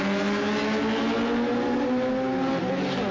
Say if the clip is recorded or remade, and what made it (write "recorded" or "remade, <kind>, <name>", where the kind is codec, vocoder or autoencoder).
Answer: recorded